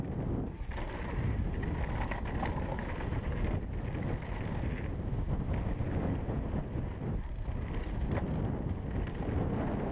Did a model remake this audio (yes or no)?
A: no